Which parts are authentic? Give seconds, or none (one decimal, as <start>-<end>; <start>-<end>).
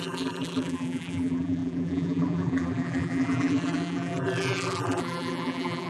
none